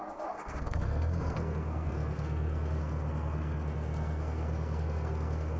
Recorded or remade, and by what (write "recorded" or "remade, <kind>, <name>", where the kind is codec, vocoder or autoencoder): remade, codec, SNAC